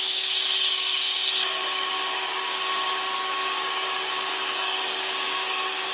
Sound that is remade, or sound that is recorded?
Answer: remade